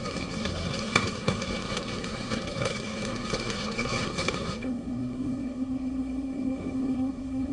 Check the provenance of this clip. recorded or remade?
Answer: remade